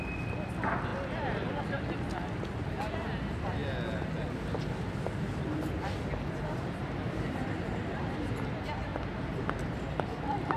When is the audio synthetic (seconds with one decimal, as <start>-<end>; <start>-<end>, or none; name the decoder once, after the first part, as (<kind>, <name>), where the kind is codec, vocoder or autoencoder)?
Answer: none